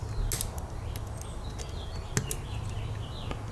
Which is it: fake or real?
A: real